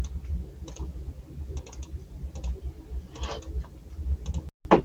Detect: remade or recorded recorded